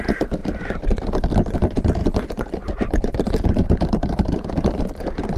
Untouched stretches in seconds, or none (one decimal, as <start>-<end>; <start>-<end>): 0.0-0.4; 0.9-2.0